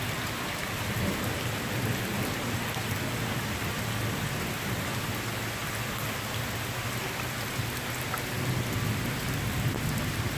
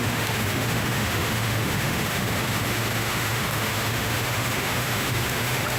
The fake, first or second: second